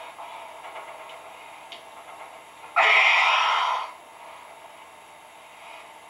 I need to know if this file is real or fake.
real